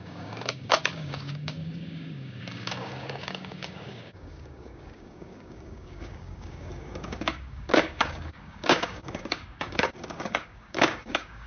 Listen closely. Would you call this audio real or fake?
fake